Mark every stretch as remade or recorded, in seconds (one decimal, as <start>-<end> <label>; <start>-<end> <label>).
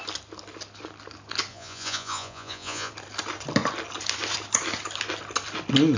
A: 0.0-1.5 recorded; 1.5-2.9 remade; 2.9-6.0 recorded